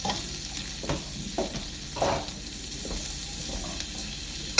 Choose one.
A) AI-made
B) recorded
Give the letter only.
B